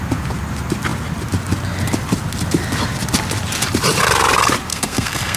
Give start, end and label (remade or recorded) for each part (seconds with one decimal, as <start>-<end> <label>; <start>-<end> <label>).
0.0-4.7 recorded; 4.7-5.4 remade

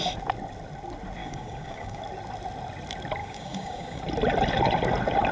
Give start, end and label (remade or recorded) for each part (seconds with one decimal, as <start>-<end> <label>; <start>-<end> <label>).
0.0-1.2 recorded; 1.2-2.0 remade; 2.0-3.2 recorded; 3.2-4.0 remade; 4.0-5.3 recorded

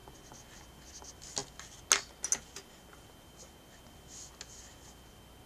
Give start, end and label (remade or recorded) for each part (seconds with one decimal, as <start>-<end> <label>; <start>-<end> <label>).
0.0-5.5 recorded

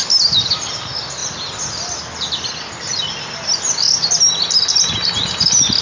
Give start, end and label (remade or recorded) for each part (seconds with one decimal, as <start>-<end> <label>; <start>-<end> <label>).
0.0-5.8 recorded

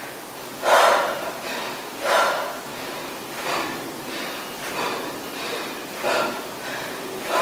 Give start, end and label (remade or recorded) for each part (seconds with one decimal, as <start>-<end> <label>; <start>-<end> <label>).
0.0-2.7 recorded; 2.7-7.4 remade

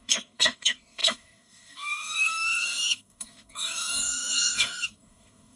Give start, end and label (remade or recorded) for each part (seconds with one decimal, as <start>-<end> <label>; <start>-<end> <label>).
0.0-5.6 remade

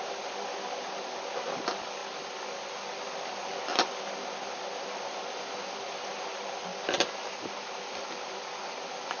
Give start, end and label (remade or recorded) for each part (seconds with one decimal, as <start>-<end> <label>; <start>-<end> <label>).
0.0-9.2 recorded